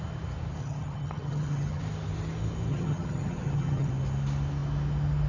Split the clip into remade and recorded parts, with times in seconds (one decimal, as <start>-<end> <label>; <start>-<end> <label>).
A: 0.0-0.6 recorded; 0.6-1.8 remade; 1.8-2.7 recorded; 2.7-3.9 remade; 3.9-5.3 recorded